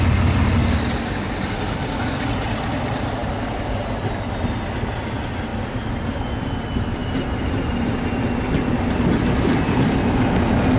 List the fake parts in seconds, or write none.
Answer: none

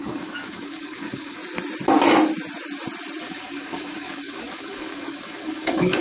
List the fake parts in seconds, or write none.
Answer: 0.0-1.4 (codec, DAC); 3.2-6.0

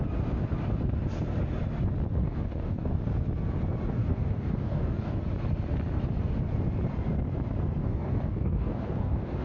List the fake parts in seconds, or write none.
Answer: 2.2-3.0 (codec, DAC); 4.0-5.2; 7.8-9.4

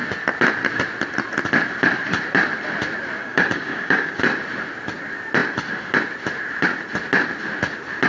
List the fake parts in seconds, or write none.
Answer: 3.2-4.2 (codec, DAC)